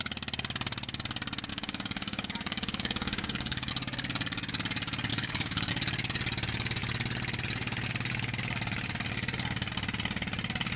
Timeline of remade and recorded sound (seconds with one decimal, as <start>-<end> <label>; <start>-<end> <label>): 0.0-1.5 recorded; 1.5-3.7 remade; 3.7-5.1 recorded; 5.1-5.7 remade; 5.7-10.8 recorded